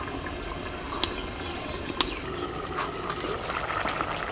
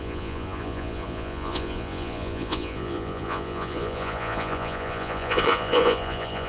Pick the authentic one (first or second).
first